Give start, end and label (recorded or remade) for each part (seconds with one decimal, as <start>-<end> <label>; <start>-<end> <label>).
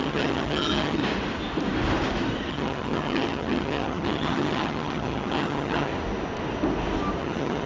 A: 0.0-1.0 remade; 1.0-2.5 recorded; 2.5-5.9 remade; 5.9-7.2 recorded; 7.2-7.7 remade